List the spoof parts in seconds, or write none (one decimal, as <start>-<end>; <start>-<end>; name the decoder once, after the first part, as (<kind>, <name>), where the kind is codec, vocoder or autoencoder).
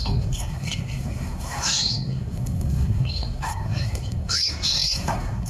0.0-5.5 (codec, SNAC)